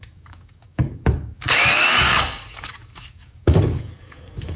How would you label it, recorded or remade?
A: remade